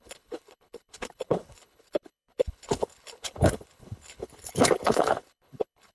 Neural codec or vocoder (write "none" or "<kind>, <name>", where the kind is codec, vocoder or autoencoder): codec, HILCodec